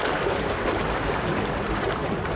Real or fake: real